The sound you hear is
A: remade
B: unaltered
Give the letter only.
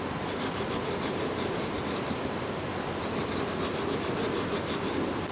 B